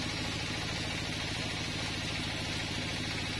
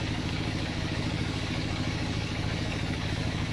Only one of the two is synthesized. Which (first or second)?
second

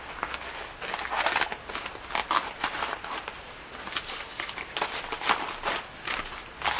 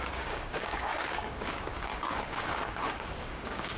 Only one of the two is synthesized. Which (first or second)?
second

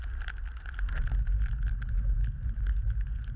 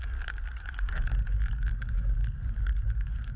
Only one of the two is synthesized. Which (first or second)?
second